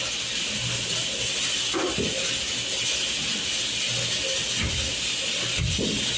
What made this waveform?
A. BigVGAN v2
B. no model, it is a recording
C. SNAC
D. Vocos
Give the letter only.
B